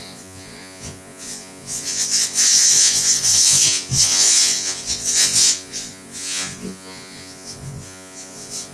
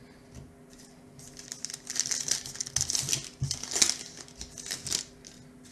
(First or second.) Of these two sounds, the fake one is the first